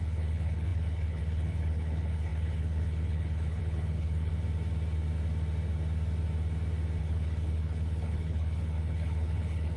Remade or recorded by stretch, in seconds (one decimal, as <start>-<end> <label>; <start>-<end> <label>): 0.0-4.3 remade; 4.3-7.0 recorded; 7.0-9.8 remade